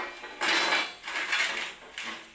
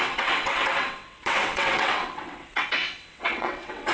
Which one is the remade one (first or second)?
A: second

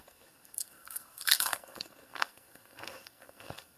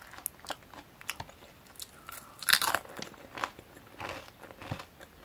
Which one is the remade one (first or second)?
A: first